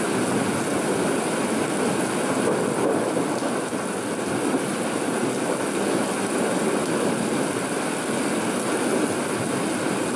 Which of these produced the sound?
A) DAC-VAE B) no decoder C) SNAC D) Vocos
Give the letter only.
B